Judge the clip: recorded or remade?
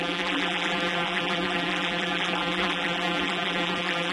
remade